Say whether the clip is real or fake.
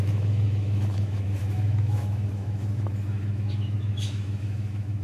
fake